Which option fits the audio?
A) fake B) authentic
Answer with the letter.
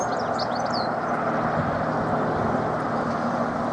B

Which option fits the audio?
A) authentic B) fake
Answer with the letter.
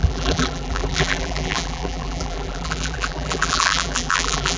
B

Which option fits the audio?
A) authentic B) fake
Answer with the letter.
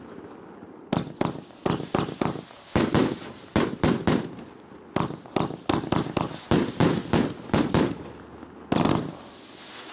A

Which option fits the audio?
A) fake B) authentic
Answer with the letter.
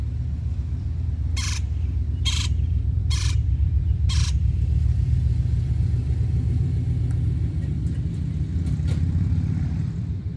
A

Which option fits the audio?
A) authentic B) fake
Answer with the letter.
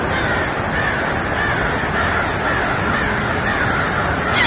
A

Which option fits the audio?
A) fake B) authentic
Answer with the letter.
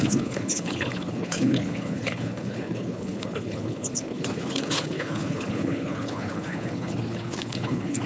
A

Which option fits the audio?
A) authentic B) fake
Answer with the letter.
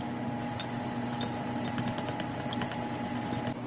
A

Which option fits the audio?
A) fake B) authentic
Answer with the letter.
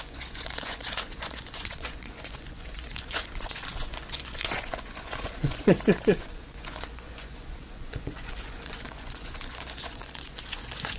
A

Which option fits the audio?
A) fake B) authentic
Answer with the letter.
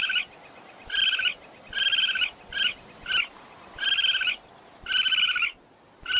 B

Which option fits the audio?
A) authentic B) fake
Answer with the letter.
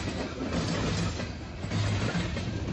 A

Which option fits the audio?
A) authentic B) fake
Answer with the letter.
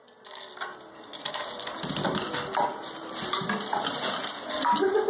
A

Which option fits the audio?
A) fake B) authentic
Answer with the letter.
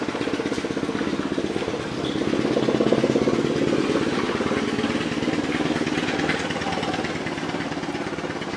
B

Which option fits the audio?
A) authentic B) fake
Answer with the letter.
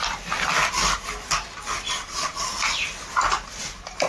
A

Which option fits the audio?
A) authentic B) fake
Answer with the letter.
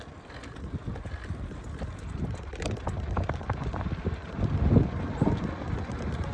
A